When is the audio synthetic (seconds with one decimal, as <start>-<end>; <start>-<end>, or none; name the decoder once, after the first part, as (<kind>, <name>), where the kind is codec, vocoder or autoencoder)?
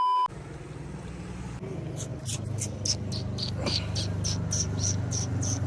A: none